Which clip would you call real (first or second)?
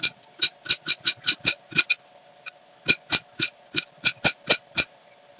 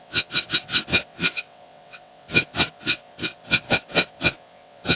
first